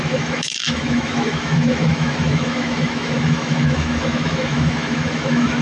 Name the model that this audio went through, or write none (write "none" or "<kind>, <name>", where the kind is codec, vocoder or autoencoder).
autoencoder, DAC-VAE